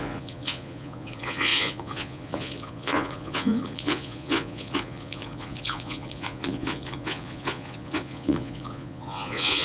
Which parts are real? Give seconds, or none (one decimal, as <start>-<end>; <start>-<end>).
none